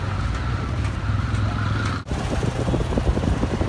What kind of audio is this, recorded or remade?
recorded